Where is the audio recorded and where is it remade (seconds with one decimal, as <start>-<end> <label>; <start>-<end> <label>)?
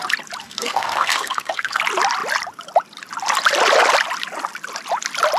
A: 0.0-0.4 recorded; 0.4-1.8 remade; 1.8-5.4 recorded